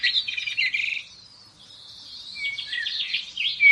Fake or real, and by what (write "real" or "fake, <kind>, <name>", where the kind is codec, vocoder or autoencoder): real